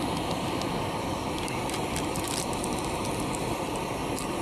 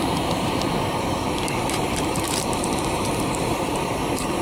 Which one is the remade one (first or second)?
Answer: second